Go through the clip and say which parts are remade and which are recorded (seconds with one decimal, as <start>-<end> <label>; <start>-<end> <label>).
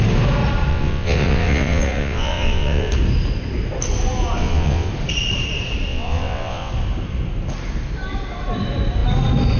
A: 0.0-0.7 recorded; 0.7-2.9 remade; 2.9-4.4 recorded; 4.4-4.9 remade; 4.9-5.9 recorded; 5.9-6.7 remade; 6.7-9.6 recorded